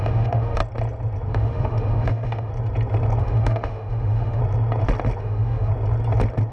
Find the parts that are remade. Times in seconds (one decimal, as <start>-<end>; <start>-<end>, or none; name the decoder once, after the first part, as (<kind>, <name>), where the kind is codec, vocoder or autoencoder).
0.0-0.6 (autoencoder, DAC-VAE); 1.3-2.5; 3.2-4.4; 5.2-5.7